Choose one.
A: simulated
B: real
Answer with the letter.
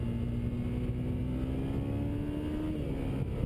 B